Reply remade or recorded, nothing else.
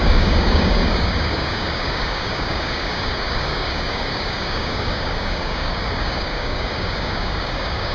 remade